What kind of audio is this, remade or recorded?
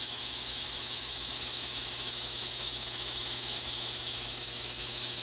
remade